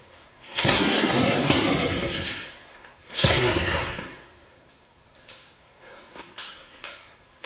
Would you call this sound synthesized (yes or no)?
yes